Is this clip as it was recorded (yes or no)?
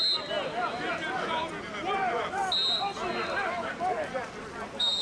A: yes